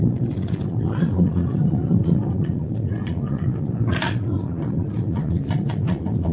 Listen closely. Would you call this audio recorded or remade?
remade